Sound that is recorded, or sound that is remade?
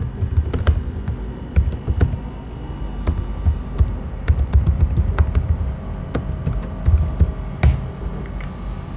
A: recorded